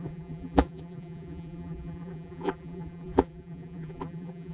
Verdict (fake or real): fake